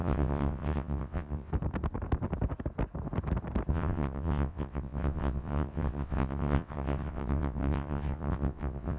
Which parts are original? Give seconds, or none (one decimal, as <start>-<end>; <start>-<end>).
1.5-3.7